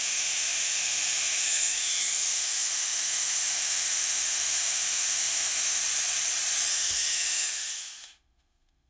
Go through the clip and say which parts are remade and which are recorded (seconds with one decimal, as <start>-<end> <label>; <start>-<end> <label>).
0.0-5.8 remade; 5.8-6.7 recorded; 6.7-8.9 remade